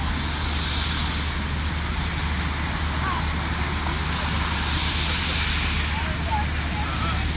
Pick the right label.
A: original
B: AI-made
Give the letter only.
A